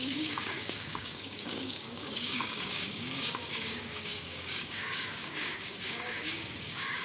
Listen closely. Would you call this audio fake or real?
fake